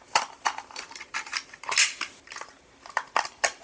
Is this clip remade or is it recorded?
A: recorded